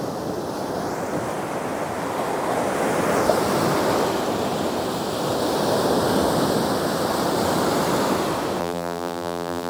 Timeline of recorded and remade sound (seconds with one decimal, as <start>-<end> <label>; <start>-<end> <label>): 0.0-8.6 recorded; 8.6-9.7 remade